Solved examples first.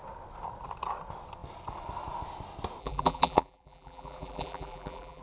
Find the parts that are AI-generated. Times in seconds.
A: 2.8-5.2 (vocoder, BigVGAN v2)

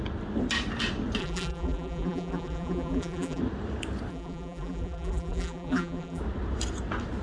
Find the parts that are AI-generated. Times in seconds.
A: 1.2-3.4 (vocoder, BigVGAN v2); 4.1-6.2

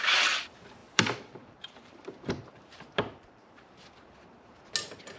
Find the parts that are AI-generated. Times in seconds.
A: 0.8-3.9 (vocoder, BigVGAN v2)

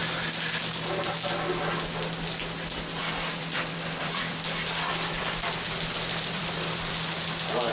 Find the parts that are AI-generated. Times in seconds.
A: 3.0-6.9 (vocoder, BigVGAN v2)

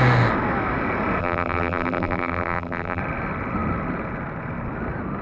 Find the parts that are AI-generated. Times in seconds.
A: 1.2-3.0 (vocoder, BigVGAN v2)

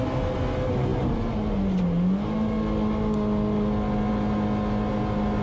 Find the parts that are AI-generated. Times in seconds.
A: none

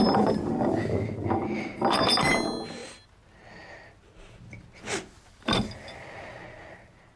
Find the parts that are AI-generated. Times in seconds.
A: none

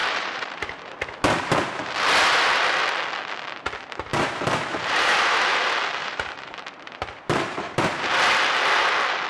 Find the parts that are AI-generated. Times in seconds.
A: 0.0-1.0 (vocoder, BigVGAN v2); 4.1-5.1; 6.0-8.0